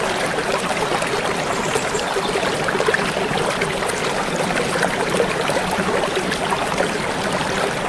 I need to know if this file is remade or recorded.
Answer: recorded